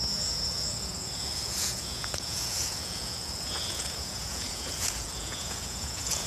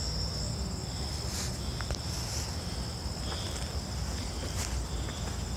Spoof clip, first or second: first